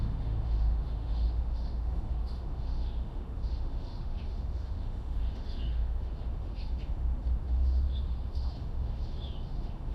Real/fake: fake